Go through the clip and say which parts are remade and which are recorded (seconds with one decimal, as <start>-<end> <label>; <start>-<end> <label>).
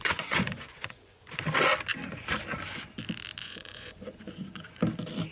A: 0.0-1.4 remade; 1.4-3.4 recorded; 3.4-4.8 remade; 4.8-5.3 recorded